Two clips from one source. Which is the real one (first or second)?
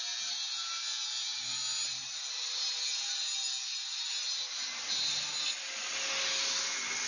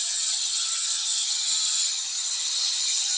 first